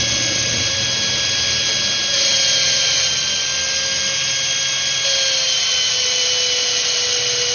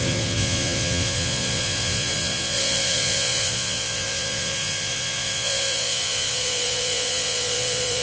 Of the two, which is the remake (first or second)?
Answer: second